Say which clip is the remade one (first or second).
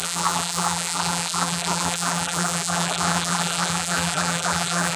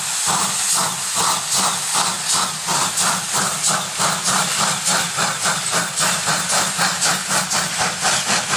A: first